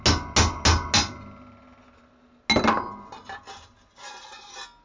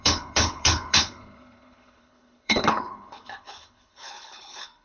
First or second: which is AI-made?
second